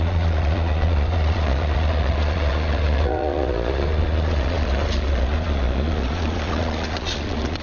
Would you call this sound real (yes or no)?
no